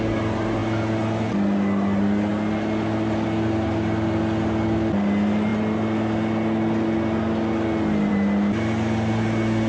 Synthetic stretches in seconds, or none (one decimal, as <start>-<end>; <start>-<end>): none